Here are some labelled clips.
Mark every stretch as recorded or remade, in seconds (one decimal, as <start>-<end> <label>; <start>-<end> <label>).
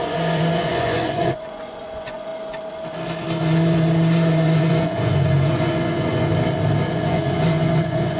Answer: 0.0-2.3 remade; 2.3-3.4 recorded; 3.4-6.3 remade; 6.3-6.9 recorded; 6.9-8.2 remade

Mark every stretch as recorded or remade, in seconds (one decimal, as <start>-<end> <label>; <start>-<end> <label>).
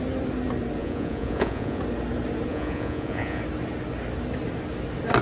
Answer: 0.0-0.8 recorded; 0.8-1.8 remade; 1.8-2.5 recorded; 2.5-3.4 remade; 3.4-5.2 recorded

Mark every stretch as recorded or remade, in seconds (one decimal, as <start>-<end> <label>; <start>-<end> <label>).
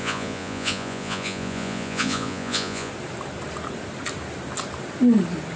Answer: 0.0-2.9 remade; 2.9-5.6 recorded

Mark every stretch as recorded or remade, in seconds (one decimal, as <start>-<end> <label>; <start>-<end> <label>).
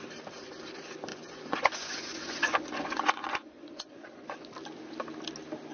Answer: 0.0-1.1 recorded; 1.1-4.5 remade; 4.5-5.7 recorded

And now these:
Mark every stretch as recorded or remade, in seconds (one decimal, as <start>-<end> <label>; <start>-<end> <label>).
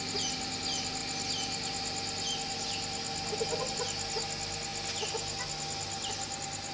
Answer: 0.0-6.7 recorded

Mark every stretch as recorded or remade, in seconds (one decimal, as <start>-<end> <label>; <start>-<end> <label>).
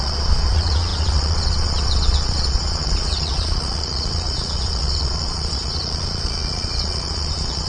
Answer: 0.0-7.7 remade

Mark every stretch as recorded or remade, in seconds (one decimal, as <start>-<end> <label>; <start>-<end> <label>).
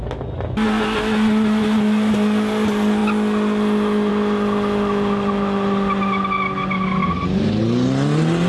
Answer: 0.0-8.5 recorded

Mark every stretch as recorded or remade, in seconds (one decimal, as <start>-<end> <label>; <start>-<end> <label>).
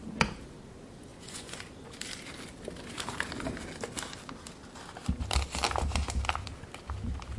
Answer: 0.0-1.1 recorded; 1.1-1.9 remade; 1.9-7.4 recorded